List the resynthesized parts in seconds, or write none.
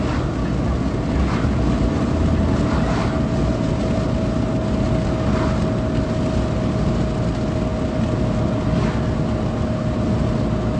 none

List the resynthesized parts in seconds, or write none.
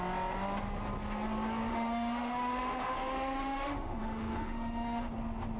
1.7-5.1 (autoencoder, DAC-VAE)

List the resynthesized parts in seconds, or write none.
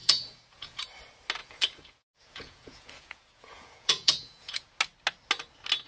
0.0-0.8 (vocoder, Vocos); 1.4-4.8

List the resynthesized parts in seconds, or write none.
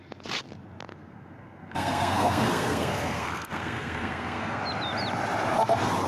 0.9-4.6 (codec, SNAC)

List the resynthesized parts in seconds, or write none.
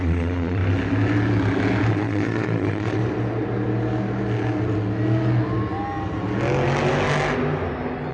0.0-0.6 (vocoder, Vocos); 1.9-3.0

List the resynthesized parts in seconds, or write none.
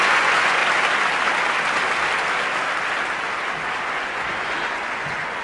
0.0-0.6 (vocoder, Vocos); 3.8-5.4